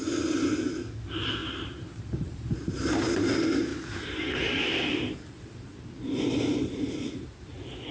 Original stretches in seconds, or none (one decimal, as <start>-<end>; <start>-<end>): 0.0-1.4; 2.8-3.7; 7.1-7.9